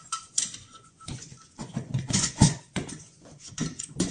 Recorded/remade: remade